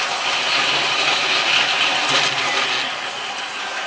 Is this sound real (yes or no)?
yes